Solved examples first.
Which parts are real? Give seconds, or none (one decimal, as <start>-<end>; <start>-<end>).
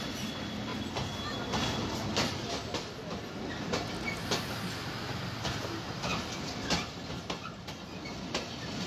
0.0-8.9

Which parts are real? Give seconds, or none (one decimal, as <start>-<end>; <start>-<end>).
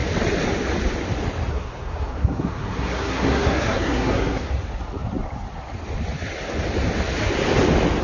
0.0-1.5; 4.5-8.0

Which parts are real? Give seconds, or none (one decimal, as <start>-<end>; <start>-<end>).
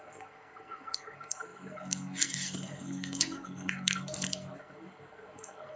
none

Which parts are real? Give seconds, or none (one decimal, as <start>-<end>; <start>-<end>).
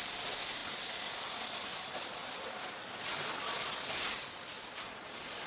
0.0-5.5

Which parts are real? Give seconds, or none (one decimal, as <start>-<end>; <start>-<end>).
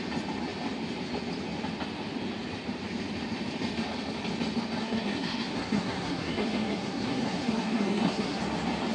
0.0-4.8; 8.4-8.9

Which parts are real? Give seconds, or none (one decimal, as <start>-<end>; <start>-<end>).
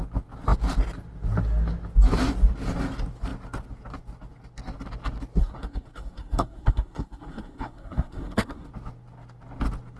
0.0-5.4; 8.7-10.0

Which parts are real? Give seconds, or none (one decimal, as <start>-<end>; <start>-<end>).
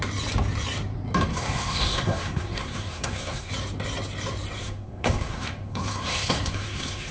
0.0-1.3; 3.5-4.6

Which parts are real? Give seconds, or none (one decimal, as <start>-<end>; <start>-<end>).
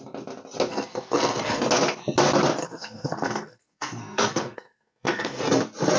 0.0-0.7; 1.6-2.6; 5.4-6.0